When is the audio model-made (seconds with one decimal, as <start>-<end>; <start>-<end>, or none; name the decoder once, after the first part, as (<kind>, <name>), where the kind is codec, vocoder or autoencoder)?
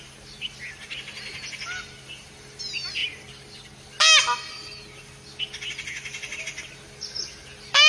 none